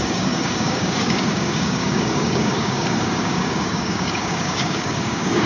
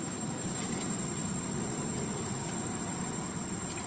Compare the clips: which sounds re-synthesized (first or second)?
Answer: first